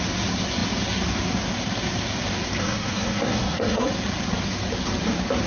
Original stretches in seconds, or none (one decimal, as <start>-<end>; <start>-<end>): 0.0-2.6; 3.9-5.5